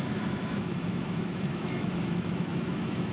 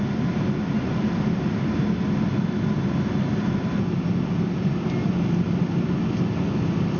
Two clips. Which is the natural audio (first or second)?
second